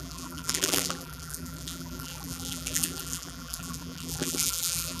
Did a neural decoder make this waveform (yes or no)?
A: yes